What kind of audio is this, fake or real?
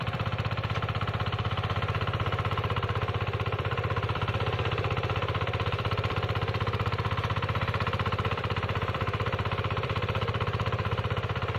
fake